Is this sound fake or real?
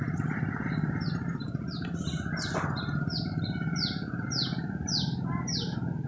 real